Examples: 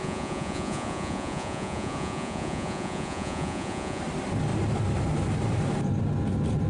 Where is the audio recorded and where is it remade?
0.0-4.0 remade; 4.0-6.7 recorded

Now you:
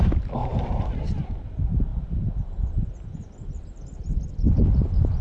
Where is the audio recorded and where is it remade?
0.0-0.4 recorded; 0.4-1.2 remade; 1.2-5.2 recorded

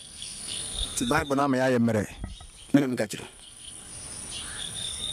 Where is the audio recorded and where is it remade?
0.0-1.4 remade; 1.4-2.7 recorded; 2.7-3.9 remade; 3.9-4.6 recorded; 4.6-5.1 remade

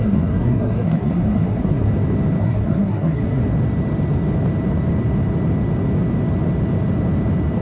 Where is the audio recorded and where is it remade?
0.0-1.9 remade; 1.9-2.4 recorded; 2.4-3.4 remade; 3.4-7.6 recorded

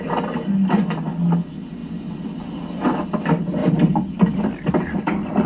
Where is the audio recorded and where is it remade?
0.0-5.5 recorded